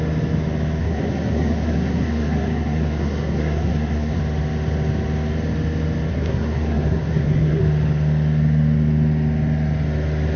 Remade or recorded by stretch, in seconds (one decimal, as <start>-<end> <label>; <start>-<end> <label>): 0.0-0.8 recorded; 0.8-4.2 remade; 4.2-6.1 recorded; 6.1-7.6 remade; 7.6-10.4 recorded